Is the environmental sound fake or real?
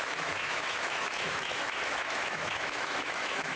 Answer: fake